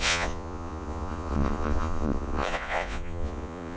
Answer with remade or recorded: remade